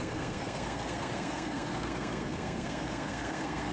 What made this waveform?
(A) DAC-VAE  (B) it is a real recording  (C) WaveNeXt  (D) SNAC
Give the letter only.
D